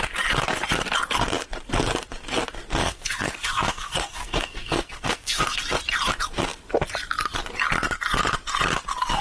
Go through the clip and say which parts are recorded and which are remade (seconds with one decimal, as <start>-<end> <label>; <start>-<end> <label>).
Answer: 0.0-2.8 recorded; 2.8-5.4 remade; 5.4-9.2 recorded